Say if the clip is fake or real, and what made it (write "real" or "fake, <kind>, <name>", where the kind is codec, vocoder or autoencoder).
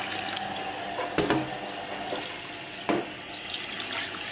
real